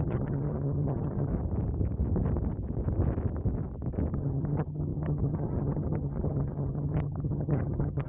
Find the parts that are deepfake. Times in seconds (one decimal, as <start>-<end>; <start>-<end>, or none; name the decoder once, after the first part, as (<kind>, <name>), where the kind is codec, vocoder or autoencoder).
0.0-1.3 (vocoder, HiFi-GAN); 4.1-8.1